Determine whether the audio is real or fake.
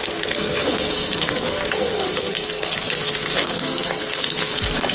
fake